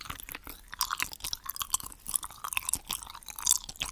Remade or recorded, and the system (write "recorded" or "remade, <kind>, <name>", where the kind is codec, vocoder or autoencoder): recorded